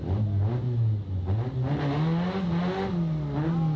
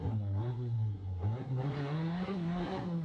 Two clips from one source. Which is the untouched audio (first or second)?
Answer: first